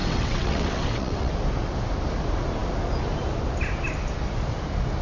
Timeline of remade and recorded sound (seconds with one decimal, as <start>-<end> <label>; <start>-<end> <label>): 0.0-1.3 remade; 1.3-5.0 recorded